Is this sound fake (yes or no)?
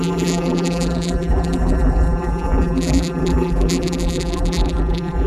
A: yes